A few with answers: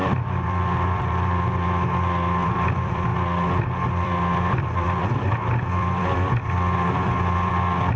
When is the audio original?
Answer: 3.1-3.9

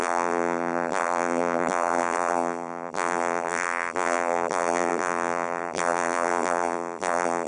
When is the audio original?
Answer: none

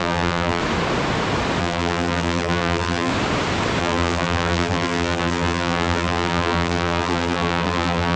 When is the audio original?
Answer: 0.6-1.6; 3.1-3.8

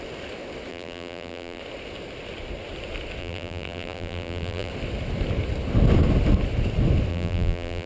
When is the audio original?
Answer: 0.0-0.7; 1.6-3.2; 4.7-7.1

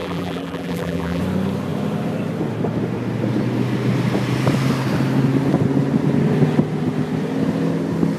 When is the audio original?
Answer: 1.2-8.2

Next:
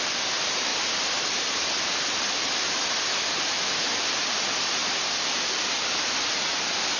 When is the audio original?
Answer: 0.0-7.0

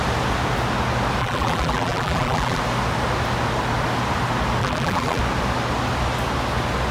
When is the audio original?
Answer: 0.0-1.2; 2.6-4.6; 5.2-6.9

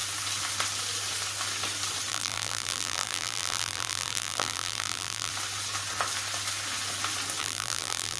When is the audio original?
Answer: 0.0-2.1; 5.3-7.4